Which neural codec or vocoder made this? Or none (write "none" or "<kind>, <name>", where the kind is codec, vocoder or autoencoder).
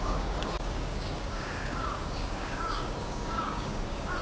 codec, DAC